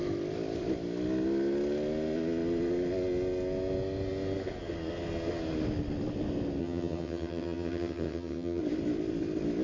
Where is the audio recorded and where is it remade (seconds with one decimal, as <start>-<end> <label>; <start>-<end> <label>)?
0.0-6.6 recorded; 6.6-8.6 remade; 8.6-9.6 recorded